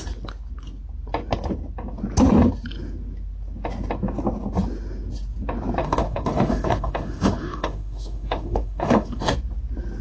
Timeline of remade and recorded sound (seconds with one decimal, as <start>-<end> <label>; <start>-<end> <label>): 0.0-5.8 recorded; 5.8-9.3 remade; 9.3-10.0 recorded